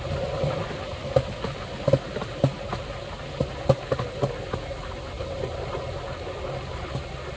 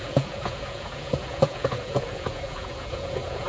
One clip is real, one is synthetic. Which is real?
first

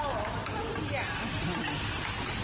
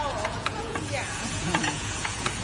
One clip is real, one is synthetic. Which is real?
first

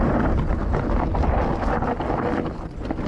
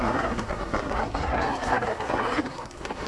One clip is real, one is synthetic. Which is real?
first